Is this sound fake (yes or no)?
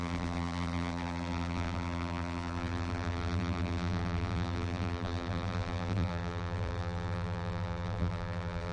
yes